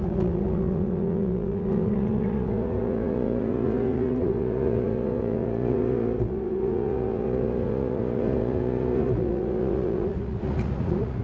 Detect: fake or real fake